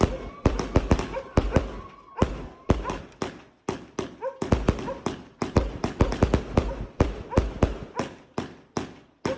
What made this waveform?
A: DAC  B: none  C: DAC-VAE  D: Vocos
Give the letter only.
B